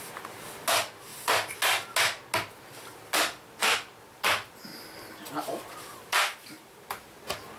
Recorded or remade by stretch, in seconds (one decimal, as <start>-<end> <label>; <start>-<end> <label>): 0.0-7.6 recorded